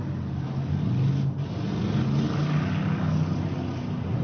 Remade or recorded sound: recorded